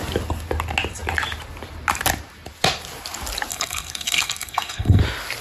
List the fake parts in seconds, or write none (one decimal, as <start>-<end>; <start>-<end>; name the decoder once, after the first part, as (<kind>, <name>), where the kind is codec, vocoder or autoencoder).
3.5-5.0 (codec, SNAC)